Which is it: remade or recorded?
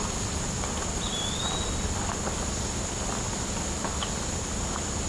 recorded